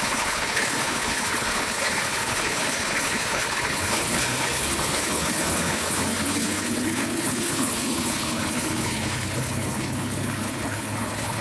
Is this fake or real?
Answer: fake